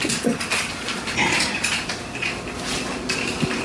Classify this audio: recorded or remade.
recorded